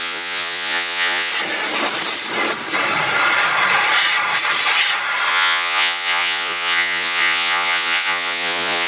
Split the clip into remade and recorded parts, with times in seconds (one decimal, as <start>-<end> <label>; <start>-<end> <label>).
0.0-1.3 remade; 1.3-5.3 recorded; 5.3-8.9 remade